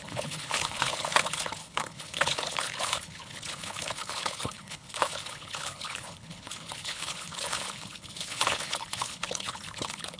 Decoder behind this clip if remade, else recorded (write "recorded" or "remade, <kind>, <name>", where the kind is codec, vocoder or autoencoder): remade, codec, HILCodec